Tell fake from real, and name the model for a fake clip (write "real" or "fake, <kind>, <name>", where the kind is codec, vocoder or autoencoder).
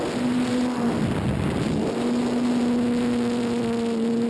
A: real